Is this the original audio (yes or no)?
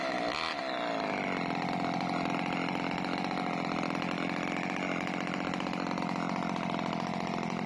yes